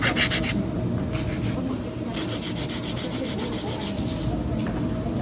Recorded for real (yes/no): yes